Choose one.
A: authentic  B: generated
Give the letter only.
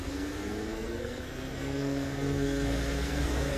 B